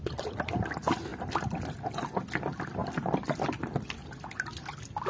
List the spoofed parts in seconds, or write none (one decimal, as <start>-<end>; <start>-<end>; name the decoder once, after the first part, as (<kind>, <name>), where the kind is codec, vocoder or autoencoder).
none